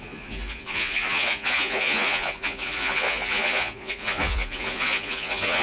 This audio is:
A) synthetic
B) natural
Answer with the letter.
A